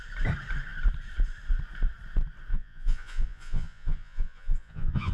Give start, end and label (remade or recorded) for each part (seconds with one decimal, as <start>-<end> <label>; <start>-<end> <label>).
0.0-2.5 recorded; 2.5-5.1 remade